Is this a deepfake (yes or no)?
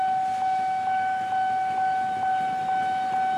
no